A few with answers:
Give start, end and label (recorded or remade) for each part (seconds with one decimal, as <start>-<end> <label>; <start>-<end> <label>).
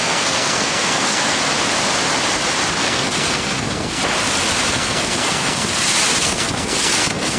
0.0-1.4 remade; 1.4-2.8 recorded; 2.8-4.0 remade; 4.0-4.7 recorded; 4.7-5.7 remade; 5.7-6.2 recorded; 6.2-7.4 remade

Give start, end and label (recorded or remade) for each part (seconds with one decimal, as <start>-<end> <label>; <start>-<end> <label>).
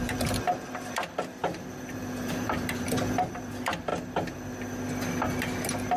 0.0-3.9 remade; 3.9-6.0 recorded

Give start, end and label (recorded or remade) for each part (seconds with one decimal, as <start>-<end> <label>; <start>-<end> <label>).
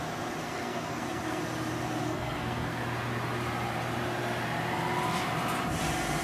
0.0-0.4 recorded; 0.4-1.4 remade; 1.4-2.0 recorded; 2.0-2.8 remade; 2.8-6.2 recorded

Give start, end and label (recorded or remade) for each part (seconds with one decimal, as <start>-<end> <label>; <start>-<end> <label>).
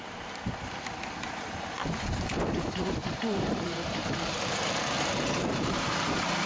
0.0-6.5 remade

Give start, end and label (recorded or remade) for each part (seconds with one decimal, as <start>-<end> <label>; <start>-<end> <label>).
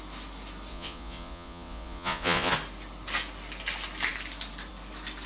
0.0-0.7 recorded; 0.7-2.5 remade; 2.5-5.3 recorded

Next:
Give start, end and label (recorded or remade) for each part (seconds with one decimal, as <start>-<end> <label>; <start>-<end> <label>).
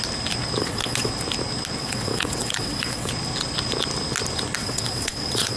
0.0-0.6 recorded; 0.6-1.1 remade; 1.1-1.8 recorded; 1.8-3.1 remade; 3.1-4.6 recorded; 4.6-5.6 remade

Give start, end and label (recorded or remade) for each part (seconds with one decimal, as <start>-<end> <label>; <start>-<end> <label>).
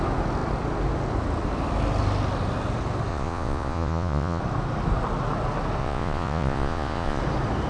0.0-3.1 recorded; 3.1-4.4 remade; 4.4-5.8 recorded; 5.8-7.2 remade; 7.2-7.7 recorded